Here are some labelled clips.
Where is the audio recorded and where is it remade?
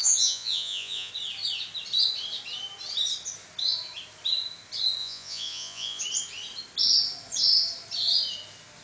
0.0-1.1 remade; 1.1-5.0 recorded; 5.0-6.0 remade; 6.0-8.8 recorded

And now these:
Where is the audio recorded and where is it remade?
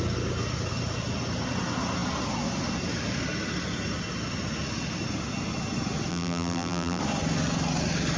0.0-6.1 recorded; 6.1-7.0 remade; 7.0-8.2 recorded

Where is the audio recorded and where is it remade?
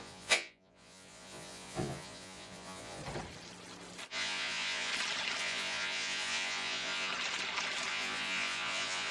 0.0-3.0 remade; 3.0-4.1 recorded; 4.1-4.9 remade; 4.9-5.4 recorded; 5.4-7.1 remade; 7.1-7.9 recorded; 7.9-9.1 remade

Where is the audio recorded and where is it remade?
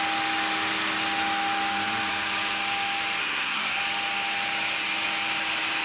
0.0-3.2 recorded; 3.2-3.8 remade; 3.8-5.8 recorded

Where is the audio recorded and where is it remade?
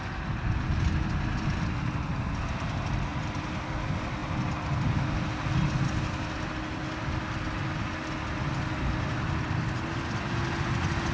0.0-11.1 recorded